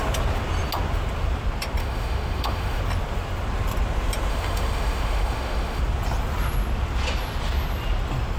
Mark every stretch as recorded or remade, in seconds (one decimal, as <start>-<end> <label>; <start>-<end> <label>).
0.0-1.8 recorded; 1.8-2.8 remade; 2.8-4.3 recorded; 4.3-5.8 remade; 5.8-8.4 recorded